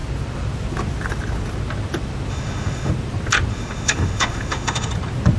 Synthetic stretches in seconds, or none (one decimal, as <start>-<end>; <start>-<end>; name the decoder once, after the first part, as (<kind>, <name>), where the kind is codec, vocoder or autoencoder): 2.3-2.9 (autoencoder, DAC-VAE); 3.5-4.9